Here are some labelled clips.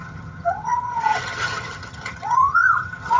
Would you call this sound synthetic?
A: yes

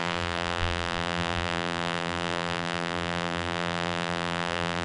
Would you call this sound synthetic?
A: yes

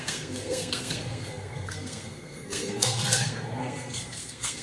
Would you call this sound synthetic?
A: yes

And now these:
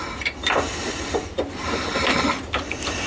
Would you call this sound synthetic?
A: no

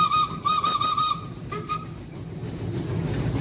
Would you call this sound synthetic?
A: no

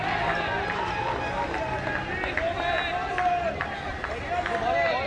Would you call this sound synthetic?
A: no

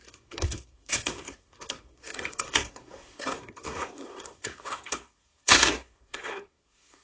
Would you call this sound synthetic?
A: yes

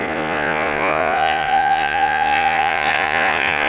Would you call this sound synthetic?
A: yes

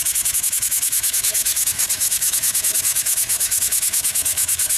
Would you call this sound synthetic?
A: yes